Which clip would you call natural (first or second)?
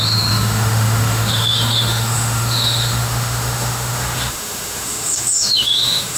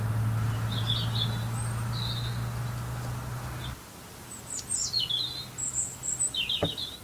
second